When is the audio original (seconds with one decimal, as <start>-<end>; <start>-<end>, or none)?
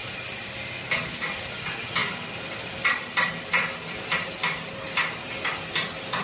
0.0-6.2